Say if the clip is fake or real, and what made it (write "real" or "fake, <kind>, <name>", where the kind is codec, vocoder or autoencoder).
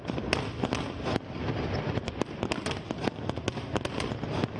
real